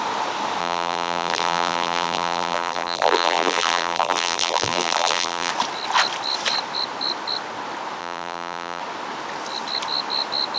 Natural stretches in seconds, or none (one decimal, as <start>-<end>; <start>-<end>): 0.0-0.6; 5.5-8.0; 8.8-10.6